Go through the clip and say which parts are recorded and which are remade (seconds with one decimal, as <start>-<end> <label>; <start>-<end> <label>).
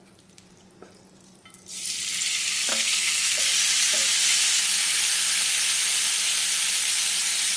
0.0-2.7 recorded; 2.7-3.4 remade; 3.4-7.6 recorded